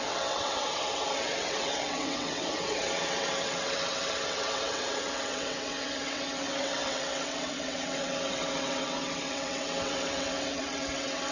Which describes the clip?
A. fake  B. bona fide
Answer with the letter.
A